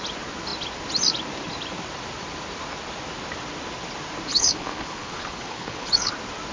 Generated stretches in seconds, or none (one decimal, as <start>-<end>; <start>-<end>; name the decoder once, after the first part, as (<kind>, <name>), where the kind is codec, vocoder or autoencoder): 4.3-6.1 (codec, HILCodec)